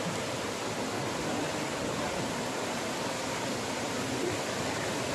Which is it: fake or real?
real